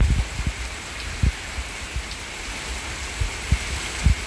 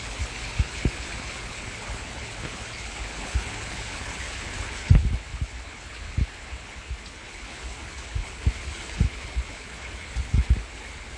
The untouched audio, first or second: first